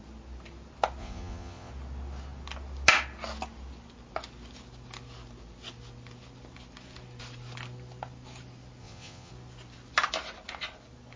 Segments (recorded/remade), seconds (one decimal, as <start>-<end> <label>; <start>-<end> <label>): 0.0-1.0 recorded; 1.0-1.7 remade; 1.7-8.8 recorded; 8.8-9.3 remade; 9.3-11.2 recorded

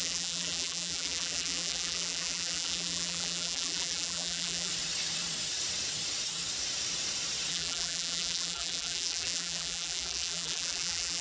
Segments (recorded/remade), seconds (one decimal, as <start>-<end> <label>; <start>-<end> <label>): 0.0-4.7 remade; 4.7-7.5 recorded; 7.5-11.2 remade

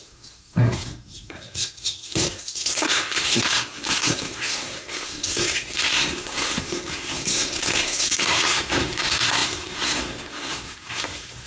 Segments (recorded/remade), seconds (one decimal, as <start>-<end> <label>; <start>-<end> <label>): 0.0-11.5 remade

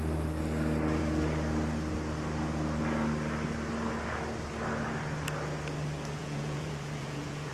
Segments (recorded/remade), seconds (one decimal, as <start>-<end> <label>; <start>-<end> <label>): 0.0-6.2 recorded; 6.2-7.5 remade